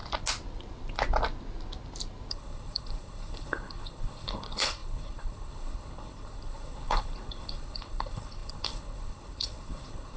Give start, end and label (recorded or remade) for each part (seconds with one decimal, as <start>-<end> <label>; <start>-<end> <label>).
0.0-2.3 recorded; 2.3-10.2 remade